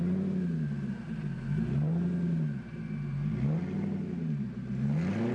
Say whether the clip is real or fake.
real